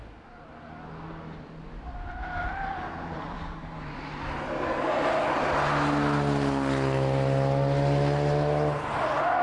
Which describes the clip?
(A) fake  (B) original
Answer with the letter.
B